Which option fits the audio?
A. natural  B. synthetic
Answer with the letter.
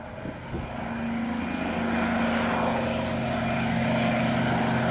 A